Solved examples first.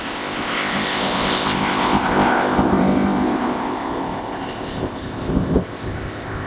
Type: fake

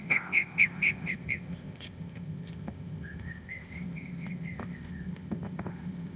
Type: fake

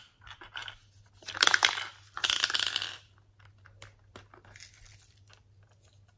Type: real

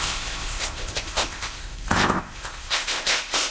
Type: fake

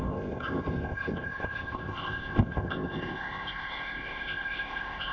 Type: fake